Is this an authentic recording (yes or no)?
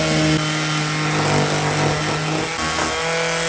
yes